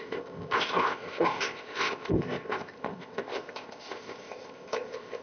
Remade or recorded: remade